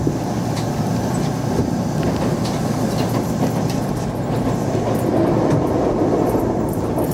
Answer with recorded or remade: remade